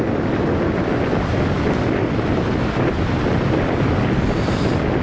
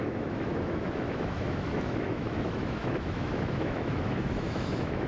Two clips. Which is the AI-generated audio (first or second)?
second